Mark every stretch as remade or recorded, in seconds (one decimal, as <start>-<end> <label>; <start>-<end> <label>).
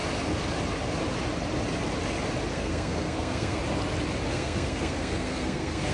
0.0-2.5 recorded; 2.5-3.6 remade; 3.6-4.3 recorded; 4.3-5.9 remade